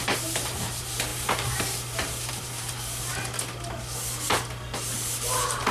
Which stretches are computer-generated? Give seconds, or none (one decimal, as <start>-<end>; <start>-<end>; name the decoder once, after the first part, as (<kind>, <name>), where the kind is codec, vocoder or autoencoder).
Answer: 0.0-3.1 (vocoder, BigVGAN v2); 4.9-5.7